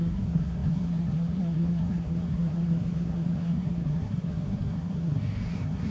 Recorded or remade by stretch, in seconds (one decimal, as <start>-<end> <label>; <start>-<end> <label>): 0.0-5.9 remade